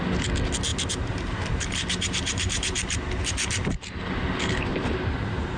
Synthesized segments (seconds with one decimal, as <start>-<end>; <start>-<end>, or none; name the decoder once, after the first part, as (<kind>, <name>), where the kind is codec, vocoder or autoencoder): 0.7-4.1 (vocoder, BigVGAN v2); 4.7-5.6